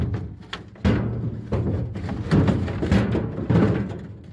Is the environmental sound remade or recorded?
recorded